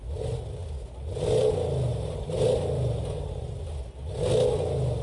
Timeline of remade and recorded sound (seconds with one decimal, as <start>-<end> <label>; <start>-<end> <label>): 0.0-1.9 recorded; 1.9-3.7 remade; 3.7-5.0 recorded